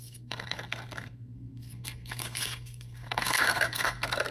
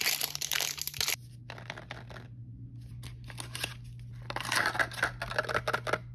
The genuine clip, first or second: second